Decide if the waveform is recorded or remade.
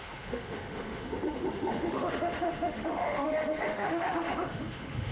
remade